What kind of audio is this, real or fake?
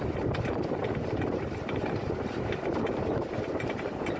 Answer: fake